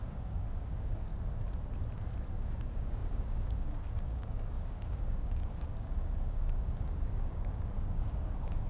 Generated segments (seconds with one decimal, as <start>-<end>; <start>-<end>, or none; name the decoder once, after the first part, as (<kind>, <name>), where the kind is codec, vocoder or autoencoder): 0.0-1.1 (codec, DAC); 2.3-8.7